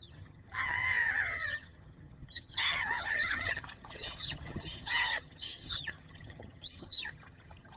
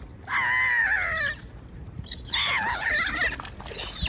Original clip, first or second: second